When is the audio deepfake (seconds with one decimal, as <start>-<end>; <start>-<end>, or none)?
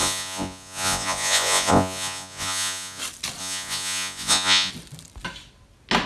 0.0-3.0; 3.4-4.7